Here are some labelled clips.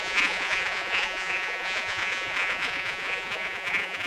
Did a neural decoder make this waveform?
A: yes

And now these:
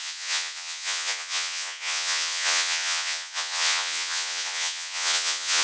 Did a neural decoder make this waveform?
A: yes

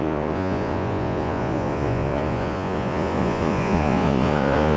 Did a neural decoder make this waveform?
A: yes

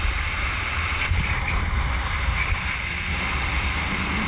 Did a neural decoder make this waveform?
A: no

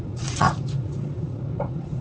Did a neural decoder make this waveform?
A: yes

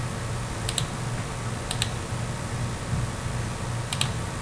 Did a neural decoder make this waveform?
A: no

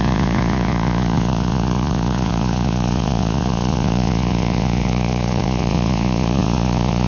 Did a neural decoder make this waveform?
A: yes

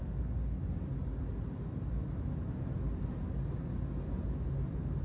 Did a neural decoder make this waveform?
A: no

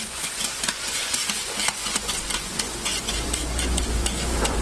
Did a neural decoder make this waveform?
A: yes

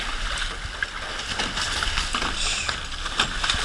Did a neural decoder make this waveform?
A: no